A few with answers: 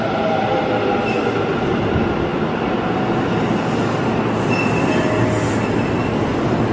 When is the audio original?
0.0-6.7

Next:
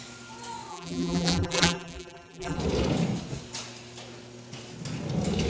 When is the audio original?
0.0-0.7; 2.6-5.5

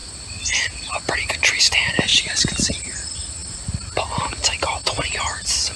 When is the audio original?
0.0-2.1; 2.9-5.8

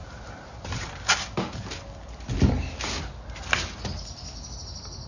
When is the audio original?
1.7-5.1

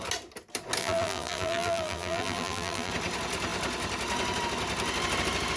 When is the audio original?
0.0-0.8; 2.9-5.6

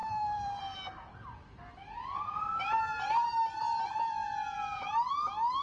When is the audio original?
0.6-2.6; 3.3-5.6